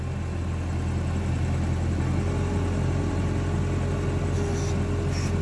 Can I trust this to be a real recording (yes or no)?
yes